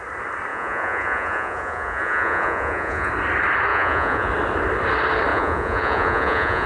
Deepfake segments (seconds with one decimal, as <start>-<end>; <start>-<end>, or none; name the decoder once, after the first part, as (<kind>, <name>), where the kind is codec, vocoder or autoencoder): 0.5-3.1 (vocoder, Vocos); 3.7-4.3; 5.3-6.7